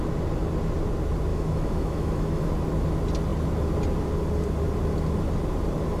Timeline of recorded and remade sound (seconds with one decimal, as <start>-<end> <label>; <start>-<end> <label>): 0.0-1.3 recorded; 1.3-2.5 remade; 2.5-6.0 recorded